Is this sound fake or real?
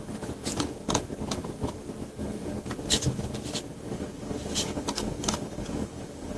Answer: fake